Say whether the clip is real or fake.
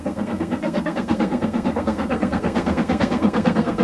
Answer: fake